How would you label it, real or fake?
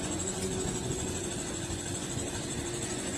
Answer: fake